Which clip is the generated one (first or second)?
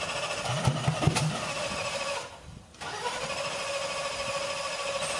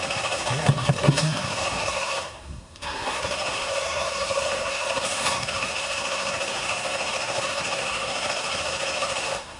second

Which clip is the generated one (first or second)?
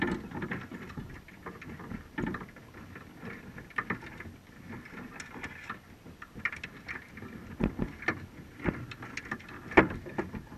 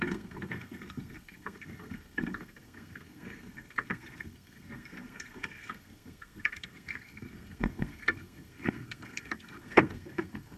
second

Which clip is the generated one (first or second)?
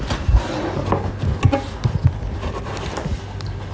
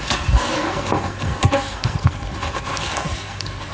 second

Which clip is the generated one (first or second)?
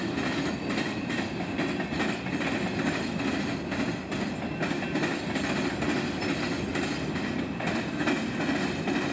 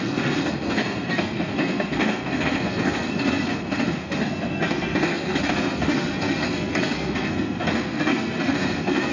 second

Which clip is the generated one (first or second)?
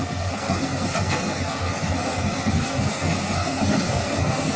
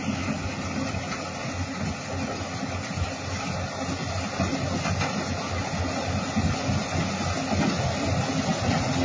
first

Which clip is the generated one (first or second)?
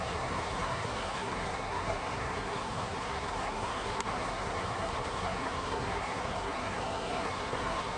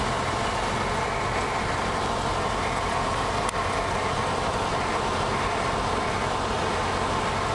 first